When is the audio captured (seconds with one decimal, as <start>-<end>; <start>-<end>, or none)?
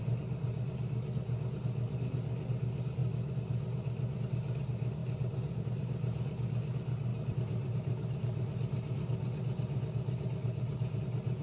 0.0-5.0; 5.6-7.1; 11.0-11.4